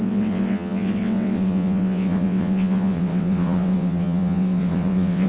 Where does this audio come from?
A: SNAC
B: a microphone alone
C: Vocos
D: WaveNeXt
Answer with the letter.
D